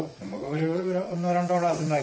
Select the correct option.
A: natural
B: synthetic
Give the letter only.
B